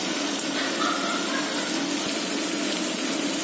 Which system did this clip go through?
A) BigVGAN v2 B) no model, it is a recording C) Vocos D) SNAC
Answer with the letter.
B